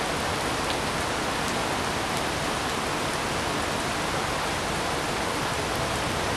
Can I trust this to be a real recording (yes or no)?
yes